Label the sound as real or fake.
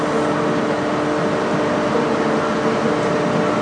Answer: real